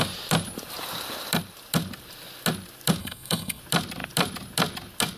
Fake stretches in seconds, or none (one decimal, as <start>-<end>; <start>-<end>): 3.0-3.6